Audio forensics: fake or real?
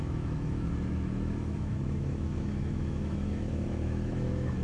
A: fake